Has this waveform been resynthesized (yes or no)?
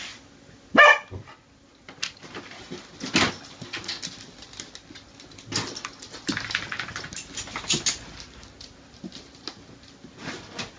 no